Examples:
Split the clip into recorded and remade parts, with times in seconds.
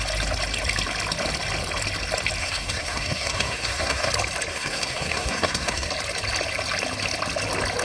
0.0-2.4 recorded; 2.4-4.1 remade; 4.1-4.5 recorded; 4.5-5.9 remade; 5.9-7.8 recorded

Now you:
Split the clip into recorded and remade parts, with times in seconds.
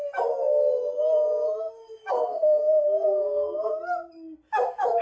0.0-0.8 recorded; 0.8-3.8 remade; 3.8-5.0 recorded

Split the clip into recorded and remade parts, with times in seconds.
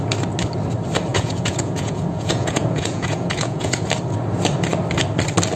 0.0-1.1 recorded; 1.1-3.9 remade; 3.9-5.6 recorded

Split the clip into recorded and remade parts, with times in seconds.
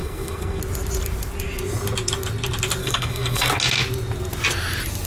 0.0-0.6 remade; 0.6-2.8 recorded; 2.8-3.5 remade; 3.5-5.1 recorded